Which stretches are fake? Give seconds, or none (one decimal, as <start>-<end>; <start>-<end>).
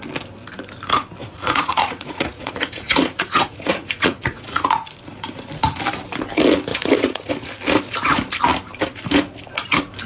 1.2-4.7; 6.7-7.3